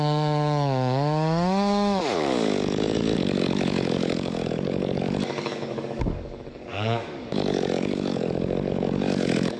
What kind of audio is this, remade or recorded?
remade